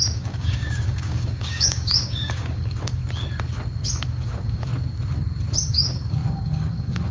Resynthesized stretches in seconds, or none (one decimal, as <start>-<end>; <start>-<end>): 0.0-3.0; 4.0-4.7; 5.7-7.1

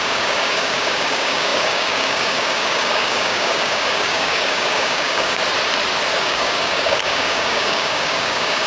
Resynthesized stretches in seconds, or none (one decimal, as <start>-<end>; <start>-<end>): 0.0-5.4; 6.2-8.7

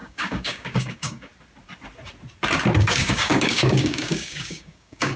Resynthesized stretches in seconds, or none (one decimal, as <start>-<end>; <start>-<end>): 0.0-1.3; 2.8-5.2

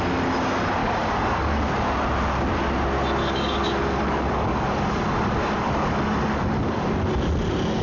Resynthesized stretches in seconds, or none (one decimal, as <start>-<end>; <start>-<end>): 0.8-1.6; 3.2-6.9

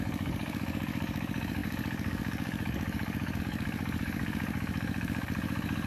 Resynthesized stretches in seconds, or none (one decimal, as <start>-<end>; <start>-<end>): 0.0-5.9

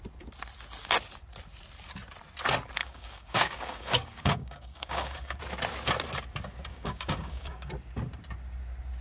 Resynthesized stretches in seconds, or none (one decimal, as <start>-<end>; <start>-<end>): 2.8-5.4; 6.7-7.7

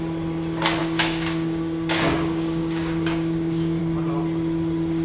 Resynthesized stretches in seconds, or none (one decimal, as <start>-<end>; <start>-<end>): 0.8-3.8

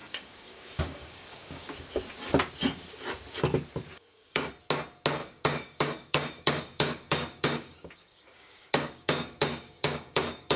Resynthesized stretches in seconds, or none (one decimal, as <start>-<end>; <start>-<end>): 0.0-1.8; 3.9-4.5; 5.2-10.6